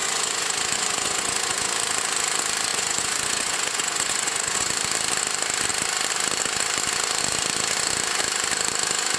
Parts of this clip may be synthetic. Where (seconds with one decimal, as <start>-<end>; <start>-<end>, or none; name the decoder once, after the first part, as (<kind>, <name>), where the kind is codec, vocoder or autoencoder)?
0.0-1.7 (vocoder, Vocos); 2.7-4.7